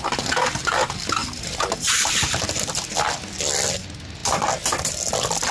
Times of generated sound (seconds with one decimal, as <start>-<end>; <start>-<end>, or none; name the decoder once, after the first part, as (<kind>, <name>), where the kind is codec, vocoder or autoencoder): none

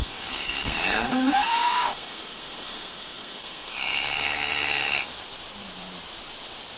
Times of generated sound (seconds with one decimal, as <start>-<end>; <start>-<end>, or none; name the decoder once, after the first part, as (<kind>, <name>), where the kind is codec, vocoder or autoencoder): 0.0-5.1 (codec, SNAC)

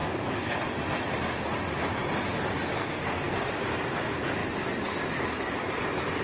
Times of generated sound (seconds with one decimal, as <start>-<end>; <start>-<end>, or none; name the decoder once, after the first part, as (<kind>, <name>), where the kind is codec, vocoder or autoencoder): 2.7-3.5 (codec, SNAC)

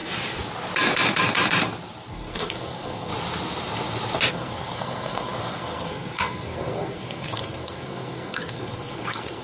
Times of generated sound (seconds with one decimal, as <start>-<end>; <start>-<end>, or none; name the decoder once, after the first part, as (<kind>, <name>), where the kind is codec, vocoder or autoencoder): 2.1-3.1 (codec, SNAC); 4.3-9.4

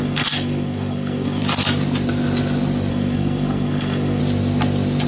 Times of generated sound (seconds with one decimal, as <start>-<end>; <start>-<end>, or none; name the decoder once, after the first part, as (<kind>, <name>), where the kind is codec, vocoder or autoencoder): 0.0-1.4 (codec, SNAC); 2.9-4.2

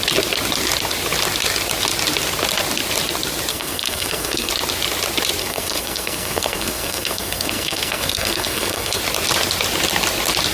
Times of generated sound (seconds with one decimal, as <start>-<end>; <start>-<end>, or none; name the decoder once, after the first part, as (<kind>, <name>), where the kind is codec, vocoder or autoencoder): 3.5-4.5 (codec, SNAC); 5.4-9.0

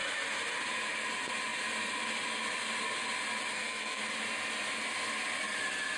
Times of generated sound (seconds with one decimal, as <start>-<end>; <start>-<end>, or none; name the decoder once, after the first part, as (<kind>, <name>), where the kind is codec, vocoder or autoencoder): 3.5-4.0 (codec, SNAC)

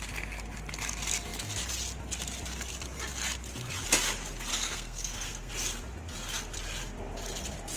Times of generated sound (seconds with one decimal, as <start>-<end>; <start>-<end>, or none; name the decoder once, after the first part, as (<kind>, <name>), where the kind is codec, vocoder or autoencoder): 4.5-5.5 (codec, SNAC)